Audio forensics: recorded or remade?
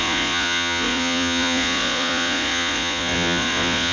remade